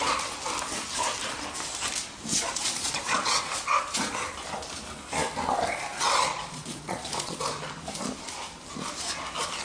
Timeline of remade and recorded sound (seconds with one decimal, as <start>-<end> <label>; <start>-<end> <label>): 0.0-2.3 recorded; 2.3-3.8 remade; 3.8-6.3 recorded; 6.3-7.4 remade; 7.4-9.6 recorded